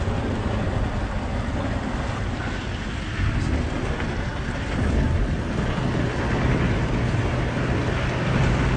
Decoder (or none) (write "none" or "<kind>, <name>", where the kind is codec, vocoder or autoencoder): none